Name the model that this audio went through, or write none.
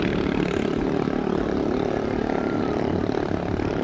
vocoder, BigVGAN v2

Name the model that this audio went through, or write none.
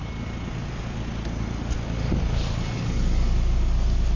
none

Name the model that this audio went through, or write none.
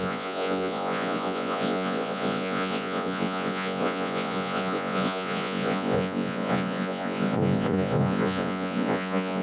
vocoder, Vocos